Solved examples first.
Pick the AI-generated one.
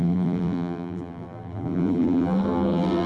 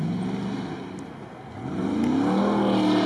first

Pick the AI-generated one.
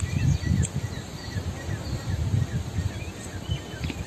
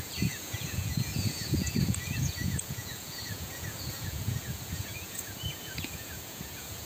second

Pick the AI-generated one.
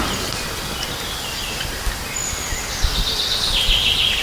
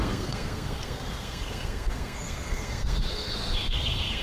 second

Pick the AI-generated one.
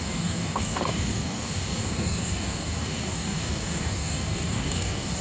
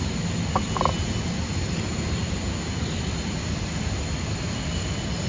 first